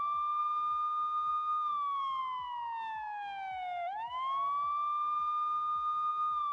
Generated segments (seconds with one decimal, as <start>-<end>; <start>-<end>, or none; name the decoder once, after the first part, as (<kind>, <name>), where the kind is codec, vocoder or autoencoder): none